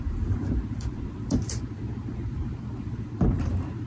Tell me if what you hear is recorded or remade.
remade